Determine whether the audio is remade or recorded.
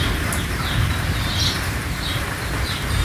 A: recorded